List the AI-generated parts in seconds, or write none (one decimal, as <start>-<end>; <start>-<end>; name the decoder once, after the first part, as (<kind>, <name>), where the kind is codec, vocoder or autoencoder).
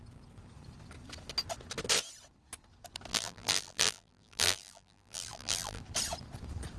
3.1-5.8 (vocoder, BigVGAN v2)